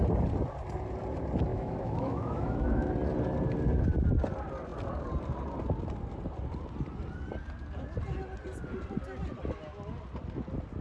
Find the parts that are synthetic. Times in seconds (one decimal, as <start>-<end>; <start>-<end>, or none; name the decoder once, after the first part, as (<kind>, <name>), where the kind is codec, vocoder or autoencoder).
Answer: 1.5-2.9 (autoencoder, DAC-VAE)